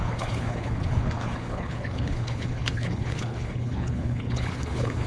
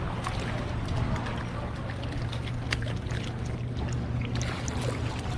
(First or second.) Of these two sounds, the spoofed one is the first